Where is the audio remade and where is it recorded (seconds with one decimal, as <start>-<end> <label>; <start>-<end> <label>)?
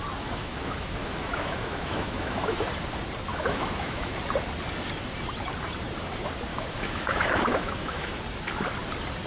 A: 0.0-0.4 recorded; 0.4-2.7 remade; 2.7-3.3 recorded; 3.3-4.2 remade; 4.2-6.5 recorded; 6.5-8.2 remade; 8.2-9.3 recorded